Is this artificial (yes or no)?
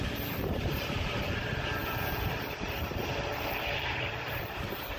yes